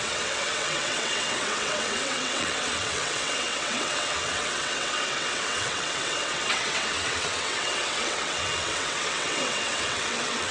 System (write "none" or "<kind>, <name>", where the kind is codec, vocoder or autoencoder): vocoder, WaveNeXt